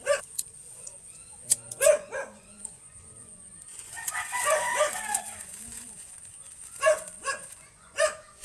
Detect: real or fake fake